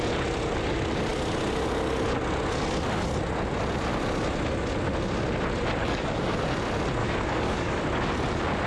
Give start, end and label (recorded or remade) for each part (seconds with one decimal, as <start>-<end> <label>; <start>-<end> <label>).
0.0-5.8 recorded; 5.8-6.4 remade; 6.4-7.0 recorded; 7.0-7.8 remade; 7.8-8.7 recorded